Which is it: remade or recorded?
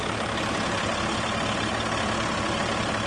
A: recorded